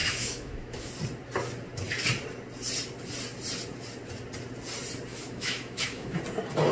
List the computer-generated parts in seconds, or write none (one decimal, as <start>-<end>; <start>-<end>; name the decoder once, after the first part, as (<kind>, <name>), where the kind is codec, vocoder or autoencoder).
0.0-0.9 (autoencoder, DAC-VAE); 5.1-6.2